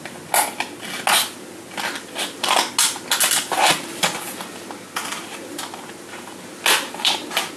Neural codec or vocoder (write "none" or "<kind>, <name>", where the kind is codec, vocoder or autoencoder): none